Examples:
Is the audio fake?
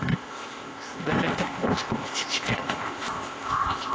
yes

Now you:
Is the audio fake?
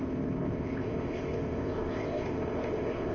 yes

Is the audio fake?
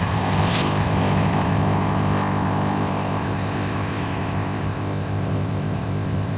yes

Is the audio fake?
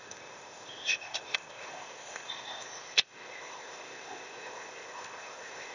yes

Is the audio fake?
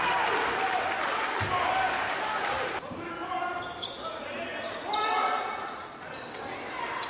no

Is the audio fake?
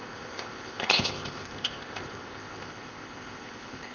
yes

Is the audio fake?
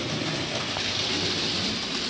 no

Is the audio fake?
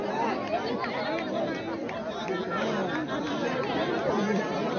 no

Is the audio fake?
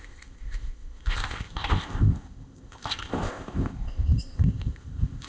yes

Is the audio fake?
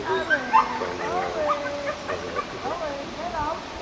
no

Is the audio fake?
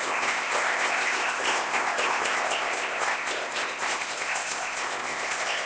yes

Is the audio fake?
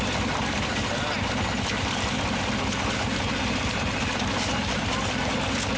no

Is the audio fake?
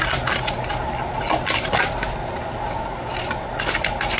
no